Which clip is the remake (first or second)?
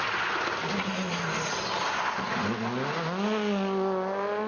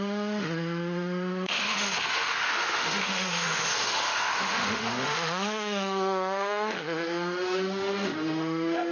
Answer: second